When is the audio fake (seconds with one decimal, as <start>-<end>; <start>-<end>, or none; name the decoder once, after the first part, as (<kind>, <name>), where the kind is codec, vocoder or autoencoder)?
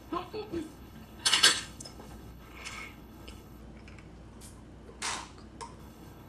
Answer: 0.0-3.6 (codec, HILCodec); 5.8-6.3